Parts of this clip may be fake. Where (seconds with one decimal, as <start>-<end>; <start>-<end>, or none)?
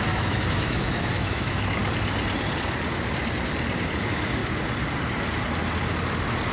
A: 0.0-1.8; 4.0-4.4